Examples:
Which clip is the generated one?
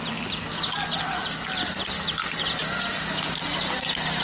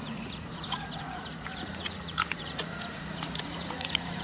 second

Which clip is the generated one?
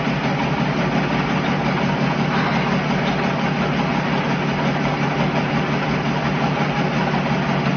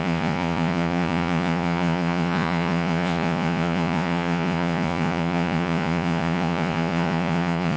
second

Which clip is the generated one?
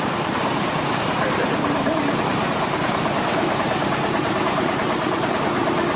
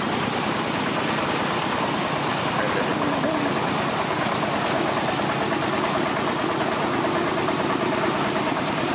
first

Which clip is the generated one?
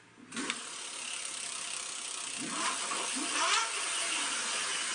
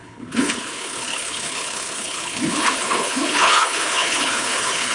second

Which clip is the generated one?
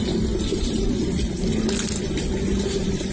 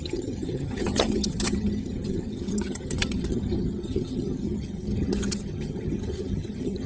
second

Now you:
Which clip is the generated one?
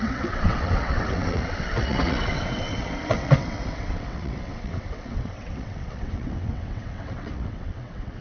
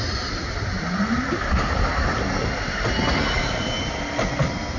first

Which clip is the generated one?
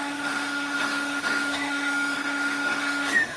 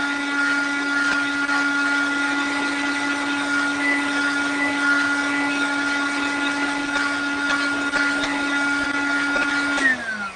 first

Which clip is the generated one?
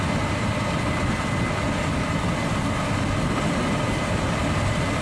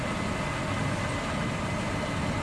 first